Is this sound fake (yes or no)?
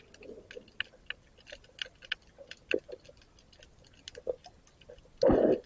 no